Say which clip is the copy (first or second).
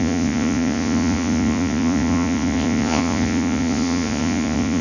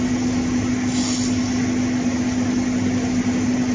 first